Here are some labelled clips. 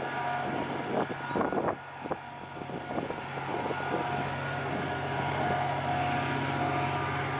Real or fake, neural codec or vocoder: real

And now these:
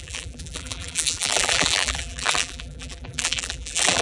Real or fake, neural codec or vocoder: fake, vocoder, BigVGAN v2